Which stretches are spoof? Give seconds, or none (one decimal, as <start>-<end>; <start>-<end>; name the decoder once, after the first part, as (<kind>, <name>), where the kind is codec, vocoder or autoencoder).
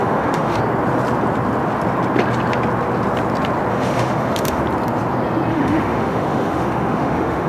0.0-0.6 (autoencoder, DAC-VAE); 3.7-4.6; 5.5-7.5